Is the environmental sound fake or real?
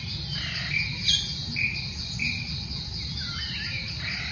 real